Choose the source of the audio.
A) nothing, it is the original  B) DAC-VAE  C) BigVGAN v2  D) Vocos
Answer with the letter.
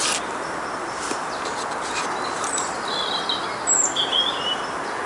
A